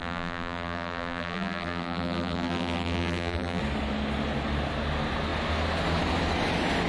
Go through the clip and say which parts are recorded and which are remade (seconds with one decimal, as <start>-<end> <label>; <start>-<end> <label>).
0.0-3.6 remade; 3.6-6.9 recorded